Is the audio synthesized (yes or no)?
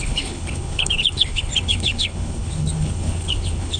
yes